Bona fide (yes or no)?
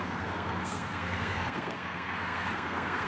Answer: no